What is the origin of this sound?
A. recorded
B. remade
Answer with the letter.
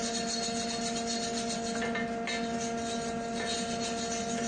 A